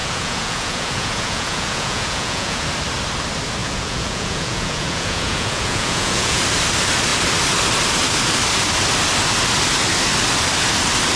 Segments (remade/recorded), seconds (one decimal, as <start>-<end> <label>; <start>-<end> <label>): 0.0-2.7 remade; 2.7-3.6 recorded; 3.6-6.4 remade; 6.4-11.2 recorded